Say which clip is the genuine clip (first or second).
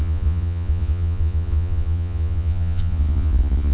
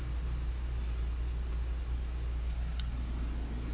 second